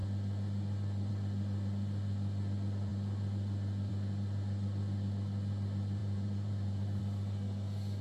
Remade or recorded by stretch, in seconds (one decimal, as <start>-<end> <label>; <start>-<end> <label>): 0.0-6.0 recorded; 6.0-7.0 remade; 7.0-8.0 recorded